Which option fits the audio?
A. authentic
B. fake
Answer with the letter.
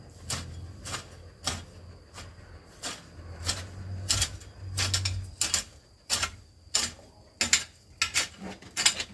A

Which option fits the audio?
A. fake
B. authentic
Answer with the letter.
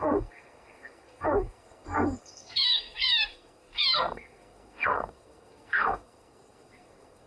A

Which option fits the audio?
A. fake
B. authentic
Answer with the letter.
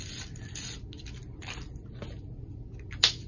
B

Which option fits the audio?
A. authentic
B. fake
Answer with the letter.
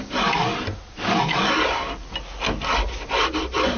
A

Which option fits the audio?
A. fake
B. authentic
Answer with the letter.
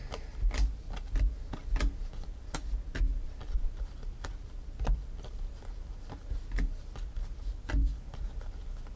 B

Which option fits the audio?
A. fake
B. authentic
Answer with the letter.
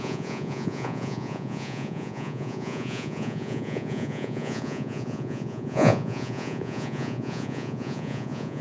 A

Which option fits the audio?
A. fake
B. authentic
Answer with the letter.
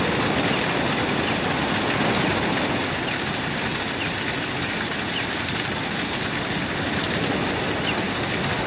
B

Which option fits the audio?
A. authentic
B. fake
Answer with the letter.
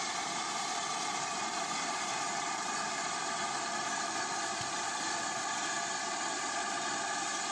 B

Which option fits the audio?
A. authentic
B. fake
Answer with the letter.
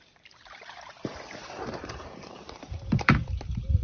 B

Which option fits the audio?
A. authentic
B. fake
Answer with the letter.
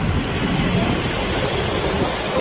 A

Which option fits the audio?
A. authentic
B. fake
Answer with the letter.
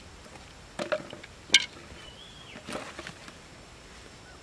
A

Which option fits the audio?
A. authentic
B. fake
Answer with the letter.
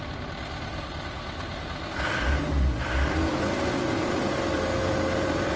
A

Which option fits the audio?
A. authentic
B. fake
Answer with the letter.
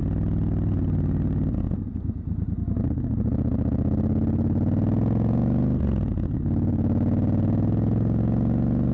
A